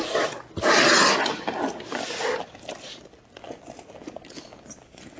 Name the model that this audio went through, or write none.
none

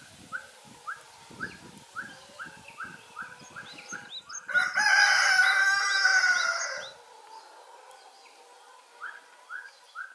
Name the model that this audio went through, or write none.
none